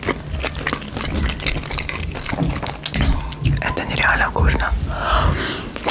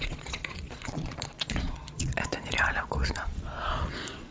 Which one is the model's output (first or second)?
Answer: second